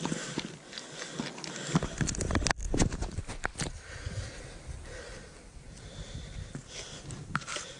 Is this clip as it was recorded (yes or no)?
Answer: yes